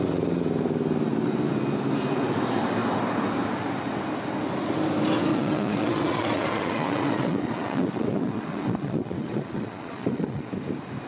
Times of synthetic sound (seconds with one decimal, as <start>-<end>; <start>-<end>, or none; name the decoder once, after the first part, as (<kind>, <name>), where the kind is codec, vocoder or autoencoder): 5.3-10.5 (vocoder, Vocos)